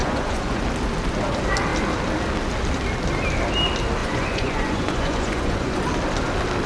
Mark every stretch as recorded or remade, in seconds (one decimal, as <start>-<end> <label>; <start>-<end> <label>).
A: 0.0-0.6 remade; 0.6-4.0 recorded; 4.0-5.8 remade; 5.8-6.7 recorded